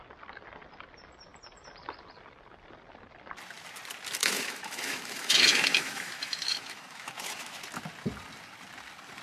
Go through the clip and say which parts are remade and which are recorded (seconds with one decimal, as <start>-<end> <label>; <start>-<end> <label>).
0.0-4.2 recorded; 4.2-7.6 remade; 7.6-9.2 recorded

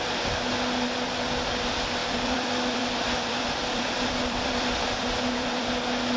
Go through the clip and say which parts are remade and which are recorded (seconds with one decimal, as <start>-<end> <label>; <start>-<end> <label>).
0.0-2.0 recorded; 2.0-5.7 remade; 5.7-6.2 recorded

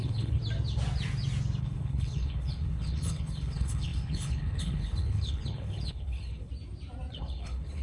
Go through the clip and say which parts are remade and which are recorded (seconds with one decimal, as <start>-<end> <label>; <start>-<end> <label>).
0.0-0.4 remade; 0.4-1.6 recorded; 1.6-6.5 remade; 6.5-7.1 recorded; 7.1-7.8 remade